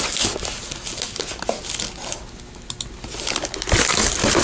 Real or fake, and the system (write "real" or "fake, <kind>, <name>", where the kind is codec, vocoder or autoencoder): real